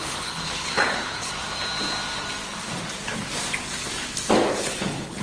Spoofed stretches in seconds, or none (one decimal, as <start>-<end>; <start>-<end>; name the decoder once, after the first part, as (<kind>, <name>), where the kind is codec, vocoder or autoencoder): 0.0-1.4 (codec, HILCodec); 4.5-5.2